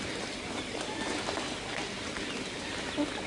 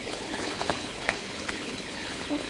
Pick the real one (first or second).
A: first